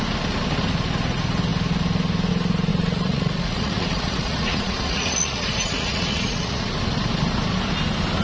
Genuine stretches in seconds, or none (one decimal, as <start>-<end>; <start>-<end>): 0.0-2.7; 6.7-8.2